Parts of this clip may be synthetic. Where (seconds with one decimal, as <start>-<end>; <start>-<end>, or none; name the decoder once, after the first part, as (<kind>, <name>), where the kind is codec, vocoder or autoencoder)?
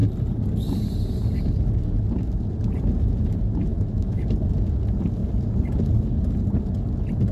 3.7-4.2 (autoencoder, DAC-VAE)